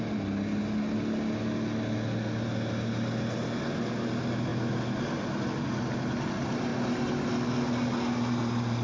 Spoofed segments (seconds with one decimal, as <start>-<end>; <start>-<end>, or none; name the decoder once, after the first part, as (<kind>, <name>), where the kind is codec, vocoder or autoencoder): none